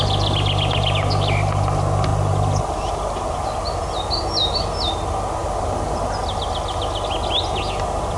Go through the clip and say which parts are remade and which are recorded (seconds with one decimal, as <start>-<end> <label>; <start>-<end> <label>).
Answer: 0.0-8.2 recorded